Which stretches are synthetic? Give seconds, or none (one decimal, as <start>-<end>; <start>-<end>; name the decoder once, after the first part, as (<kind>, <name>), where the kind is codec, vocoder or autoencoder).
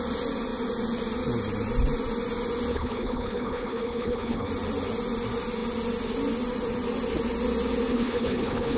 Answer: 2.7-4.5 (codec, HILCodec); 7.9-8.8